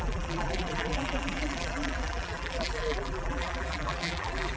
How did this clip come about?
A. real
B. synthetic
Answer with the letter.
B